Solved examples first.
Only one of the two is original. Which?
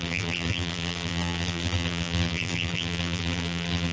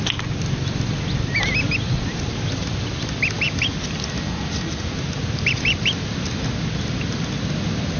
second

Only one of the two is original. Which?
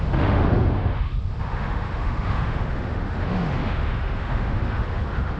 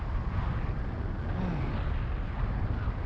second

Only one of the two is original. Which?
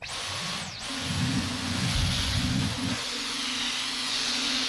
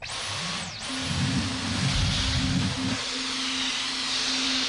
second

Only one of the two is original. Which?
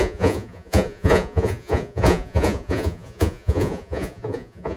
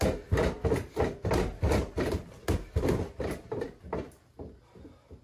second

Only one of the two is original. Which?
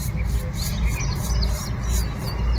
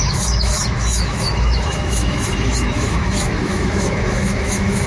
first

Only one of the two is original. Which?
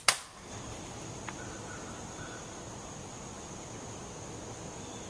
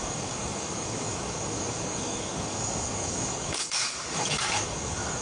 first